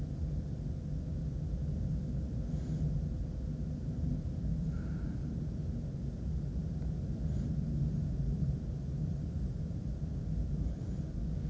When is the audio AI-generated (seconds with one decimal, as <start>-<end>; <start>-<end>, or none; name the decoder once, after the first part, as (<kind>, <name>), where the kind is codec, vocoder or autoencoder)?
none